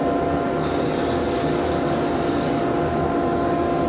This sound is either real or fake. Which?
real